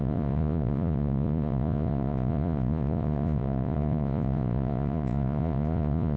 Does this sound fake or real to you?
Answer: fake